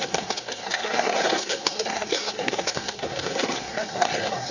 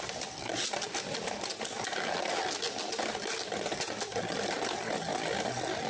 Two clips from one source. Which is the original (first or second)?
second